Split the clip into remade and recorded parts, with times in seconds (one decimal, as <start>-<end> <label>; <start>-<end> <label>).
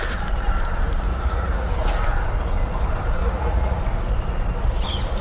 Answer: 0.0-1.1 recorded; 1.1-1.7 remade; 1.7-3.2 recorded; 3.2-3.8 remade; 3.8-5.2 recorded